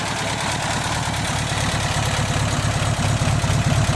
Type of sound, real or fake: real